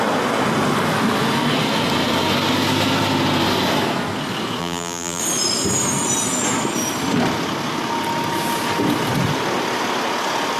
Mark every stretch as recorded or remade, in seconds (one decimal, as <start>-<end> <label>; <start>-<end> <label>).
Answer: 0.0-4.6 recorded; 4.6-5.2 remade; 5.2-10.6 recorded